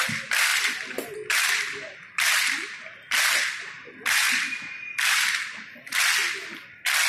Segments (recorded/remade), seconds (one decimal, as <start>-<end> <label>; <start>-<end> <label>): 0.0-0.5 recorded; 0.5-1.5 remade; 1.5-7.1 recorded